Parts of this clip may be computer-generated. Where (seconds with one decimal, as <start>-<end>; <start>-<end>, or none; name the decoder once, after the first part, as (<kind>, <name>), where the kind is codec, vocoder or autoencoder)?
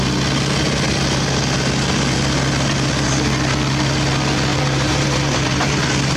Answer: 4.5-5.7 (vocoder, BigVGAN v2)